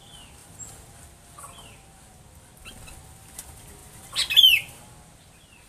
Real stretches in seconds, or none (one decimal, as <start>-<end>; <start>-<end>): 0.0-5.7